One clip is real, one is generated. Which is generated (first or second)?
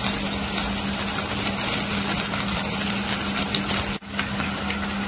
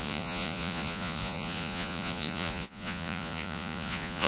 second